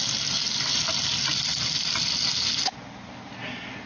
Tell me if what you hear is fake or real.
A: real